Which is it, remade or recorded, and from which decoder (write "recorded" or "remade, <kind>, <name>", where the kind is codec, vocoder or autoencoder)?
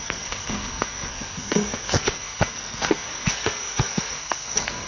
remade, codec, SNAC